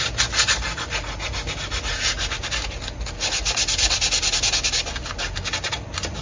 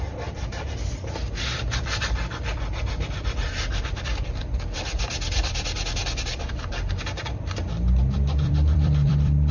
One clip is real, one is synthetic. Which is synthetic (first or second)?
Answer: second